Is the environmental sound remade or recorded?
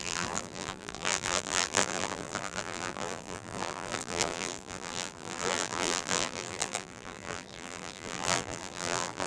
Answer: remade